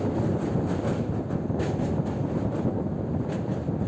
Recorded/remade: recorded